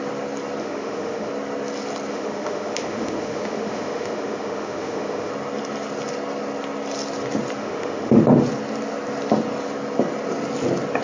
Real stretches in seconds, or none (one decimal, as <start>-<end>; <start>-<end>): 0.0-0.6; 1.3-2.1; 5.3-7.6; 8.2-11.0